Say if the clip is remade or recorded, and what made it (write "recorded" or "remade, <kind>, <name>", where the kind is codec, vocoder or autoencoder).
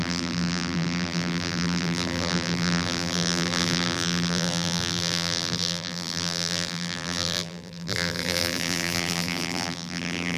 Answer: remade, vocoder, BigVGAN v2